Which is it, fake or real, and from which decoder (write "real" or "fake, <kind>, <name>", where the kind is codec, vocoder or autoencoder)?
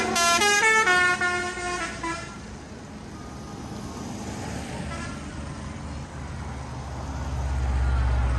real